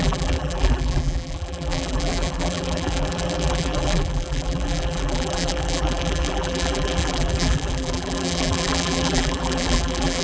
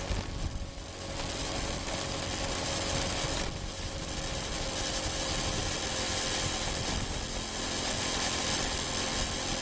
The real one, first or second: second